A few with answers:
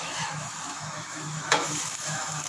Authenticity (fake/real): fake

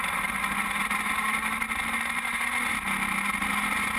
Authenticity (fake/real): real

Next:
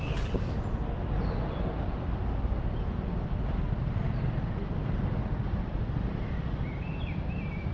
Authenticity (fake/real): real